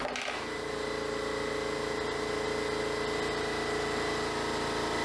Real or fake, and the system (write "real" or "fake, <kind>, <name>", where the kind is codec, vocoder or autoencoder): real